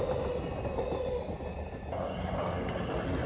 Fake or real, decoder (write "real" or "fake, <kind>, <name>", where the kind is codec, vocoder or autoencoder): real